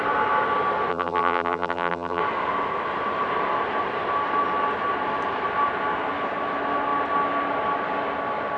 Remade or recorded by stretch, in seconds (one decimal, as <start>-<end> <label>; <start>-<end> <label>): 0.0-0.9 recorded; 0.9-2.2 remade; 2.2-8.6 recorded